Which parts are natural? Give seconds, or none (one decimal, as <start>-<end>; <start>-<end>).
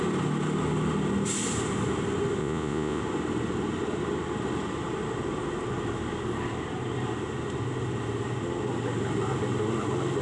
0.0-2.4; 3.0-10.2